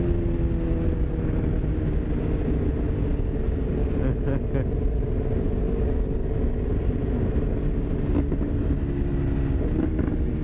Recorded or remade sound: recorded